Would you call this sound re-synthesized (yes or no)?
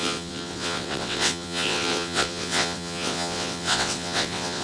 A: yes